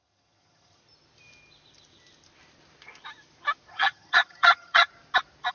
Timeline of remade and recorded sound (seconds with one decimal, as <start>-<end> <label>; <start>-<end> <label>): 0.0-0.8 remade; 0.8-3.7 recorded; 3.7-4.9 remade; 4.9-5.5 recorded